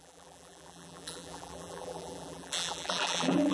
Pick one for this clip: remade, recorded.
remade